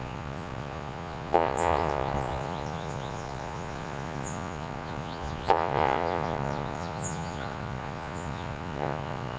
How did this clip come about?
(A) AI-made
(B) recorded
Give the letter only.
A